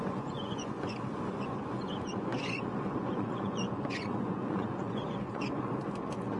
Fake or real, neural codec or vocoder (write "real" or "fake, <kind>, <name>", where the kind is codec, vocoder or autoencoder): fake, vocoder, Vocos